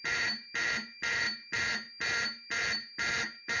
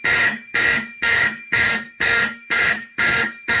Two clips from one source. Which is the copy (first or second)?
second